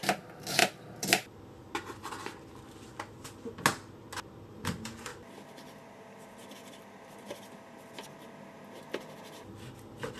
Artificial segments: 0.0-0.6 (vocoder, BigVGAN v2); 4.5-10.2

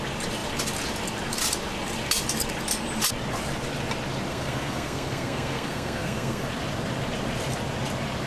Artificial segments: 4.3-6.5 (codec, SNAC)

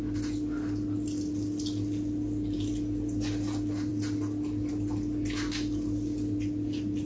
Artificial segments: none

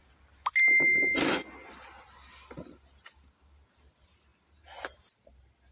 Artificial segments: none

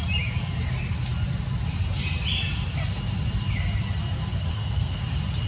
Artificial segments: 4.5-5.0 (codec, SNAC)

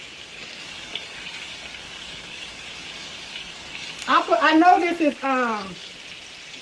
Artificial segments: 0.0-5.9 (codec, DAC)